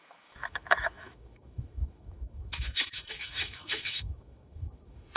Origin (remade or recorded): remade